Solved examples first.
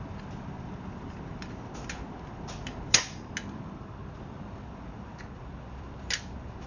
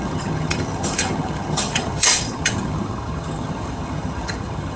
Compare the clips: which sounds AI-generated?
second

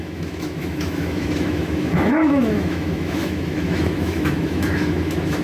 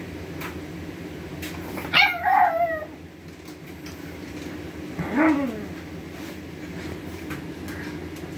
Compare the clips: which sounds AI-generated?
first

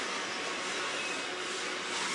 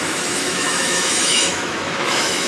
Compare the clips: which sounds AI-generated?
second